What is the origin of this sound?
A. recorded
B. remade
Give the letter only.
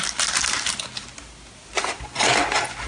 A